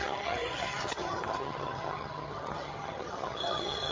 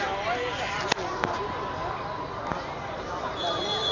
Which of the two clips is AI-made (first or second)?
first